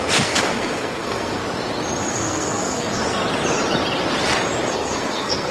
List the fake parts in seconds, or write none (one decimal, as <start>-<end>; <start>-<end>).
0.0-1.4; 2.1-3.2; 4.7-5.5